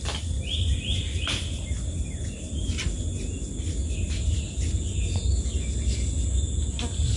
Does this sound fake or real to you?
real